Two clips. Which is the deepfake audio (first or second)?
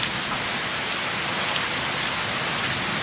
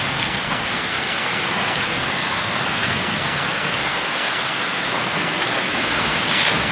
second